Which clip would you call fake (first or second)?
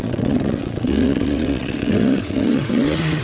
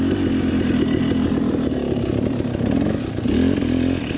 first